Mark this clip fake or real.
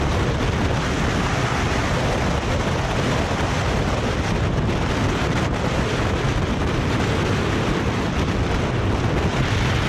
real